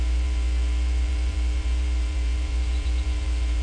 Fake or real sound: fake